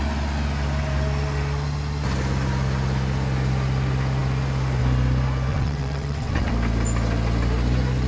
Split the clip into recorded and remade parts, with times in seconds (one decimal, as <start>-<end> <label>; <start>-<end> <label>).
0.0-5.5 recorded; 5.5-6.5 remade; 6.5-8.1 recorded